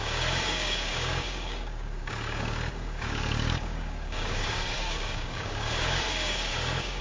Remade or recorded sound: remade